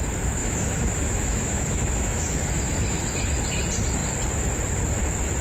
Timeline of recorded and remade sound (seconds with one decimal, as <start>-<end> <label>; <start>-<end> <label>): 0.0-0.4 recorded; 0.4-3.0 remade; 3.0-5.4 recorded